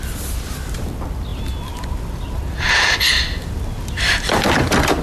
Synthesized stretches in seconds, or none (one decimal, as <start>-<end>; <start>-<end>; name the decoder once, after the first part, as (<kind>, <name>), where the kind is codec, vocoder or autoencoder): 0.0-5.0 (vocoder, BigVGAN v2)